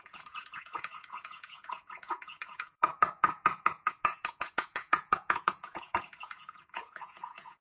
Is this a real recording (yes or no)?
no